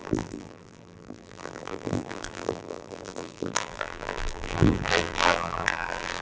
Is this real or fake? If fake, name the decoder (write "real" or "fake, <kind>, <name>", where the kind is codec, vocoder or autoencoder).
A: fake, vocoder, BigVGAN v2